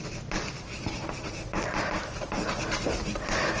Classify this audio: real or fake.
real